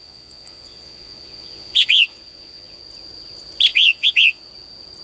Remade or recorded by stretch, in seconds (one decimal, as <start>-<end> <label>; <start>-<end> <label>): 0.0-2.8 remade; 2.8-3.7 recorded; 3.7-4.4 remade; 4.4-5.0 recorded